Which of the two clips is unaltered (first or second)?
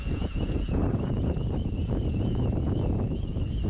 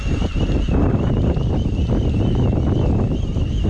second